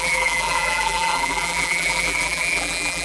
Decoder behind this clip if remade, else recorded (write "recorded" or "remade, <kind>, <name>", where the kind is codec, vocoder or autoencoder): remade, vocoder, BigVGAN v2